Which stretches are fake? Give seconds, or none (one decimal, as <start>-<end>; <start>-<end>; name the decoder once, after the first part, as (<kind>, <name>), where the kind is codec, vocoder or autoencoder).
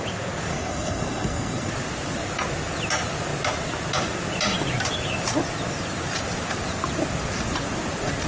0.5-1.7 (codec, SNAC)